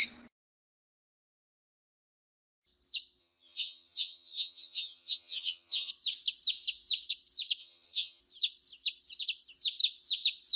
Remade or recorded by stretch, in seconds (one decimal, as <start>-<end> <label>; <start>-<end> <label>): 0.0-3.2 recorded; 3.2-5.9 remade; 5.9-7.6 recorded; 7.6-8.2 remade; 8.2-10.6 recorded